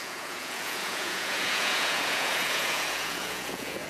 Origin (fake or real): fake